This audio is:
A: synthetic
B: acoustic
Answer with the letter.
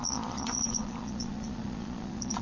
A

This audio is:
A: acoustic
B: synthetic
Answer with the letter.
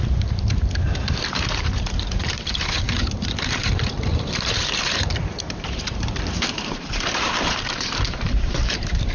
B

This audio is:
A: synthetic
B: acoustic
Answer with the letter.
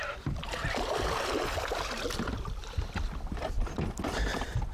A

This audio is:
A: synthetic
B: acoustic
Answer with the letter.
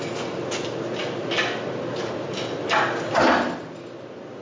B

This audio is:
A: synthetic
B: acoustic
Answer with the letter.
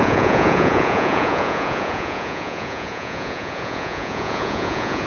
A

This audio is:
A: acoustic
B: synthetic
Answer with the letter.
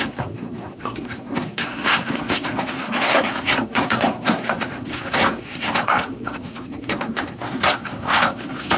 B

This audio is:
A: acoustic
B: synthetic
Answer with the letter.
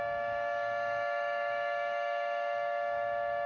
B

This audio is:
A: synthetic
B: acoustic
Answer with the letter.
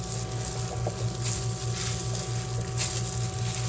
B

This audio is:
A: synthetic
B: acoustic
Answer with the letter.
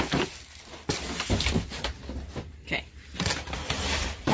B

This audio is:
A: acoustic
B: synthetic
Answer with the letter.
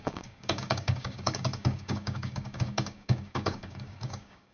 B